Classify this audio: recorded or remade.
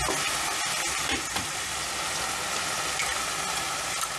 recorded